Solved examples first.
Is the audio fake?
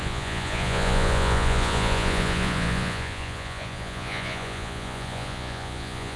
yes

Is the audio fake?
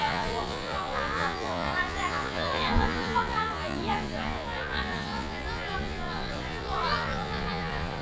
yes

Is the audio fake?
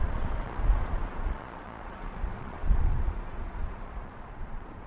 yes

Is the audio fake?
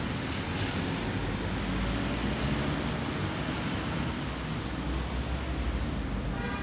no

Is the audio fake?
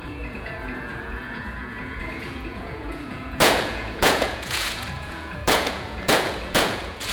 yes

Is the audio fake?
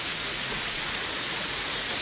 yes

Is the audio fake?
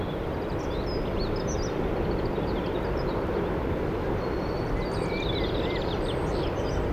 no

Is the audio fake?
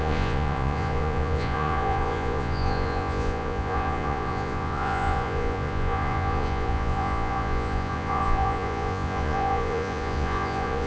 yes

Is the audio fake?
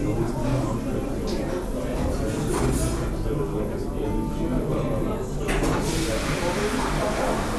no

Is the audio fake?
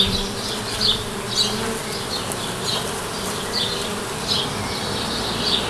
no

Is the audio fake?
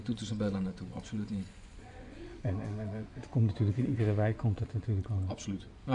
yes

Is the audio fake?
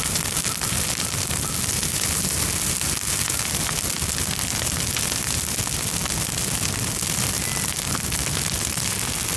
no